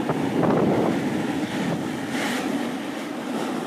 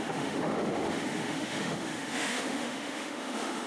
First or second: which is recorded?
first